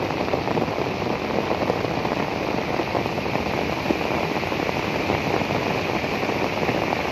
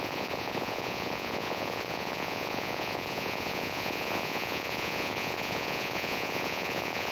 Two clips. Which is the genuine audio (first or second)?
first